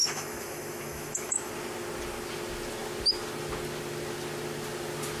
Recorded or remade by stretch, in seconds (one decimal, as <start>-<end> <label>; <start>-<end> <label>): 0.0-1.5 remade; 1.5-5.2 recorded